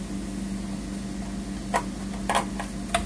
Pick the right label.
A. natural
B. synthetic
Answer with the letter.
A